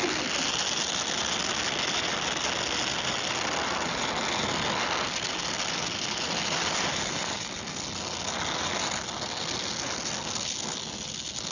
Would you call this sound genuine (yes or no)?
yes